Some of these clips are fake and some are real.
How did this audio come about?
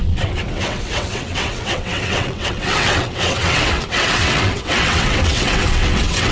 fake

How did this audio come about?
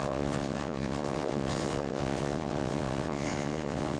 fake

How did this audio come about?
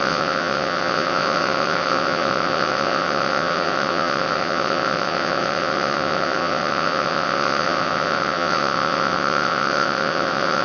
fake